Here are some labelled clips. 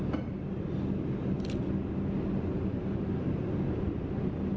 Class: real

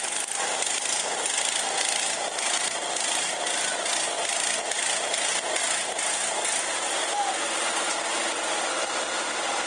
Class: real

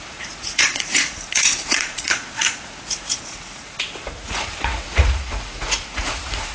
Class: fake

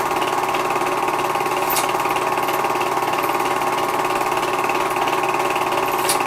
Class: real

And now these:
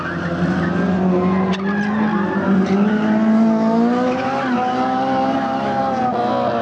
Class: real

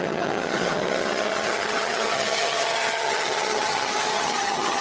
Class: fake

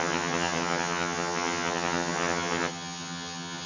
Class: fake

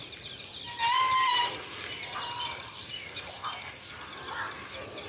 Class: real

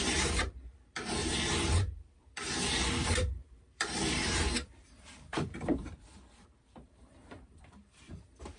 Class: fake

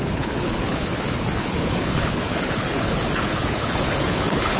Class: fake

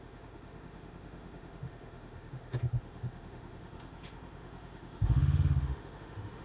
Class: fake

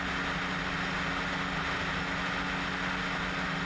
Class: real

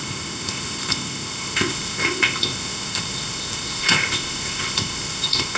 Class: fake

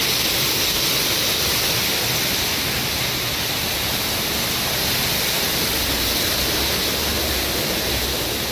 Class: real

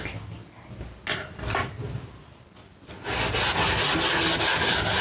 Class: real